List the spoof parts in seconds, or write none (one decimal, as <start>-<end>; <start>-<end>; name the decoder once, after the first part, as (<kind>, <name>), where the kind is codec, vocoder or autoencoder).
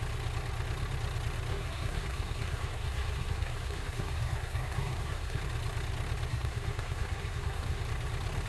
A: 1.5-5.4 (codec, SNAC); 6.3-7.8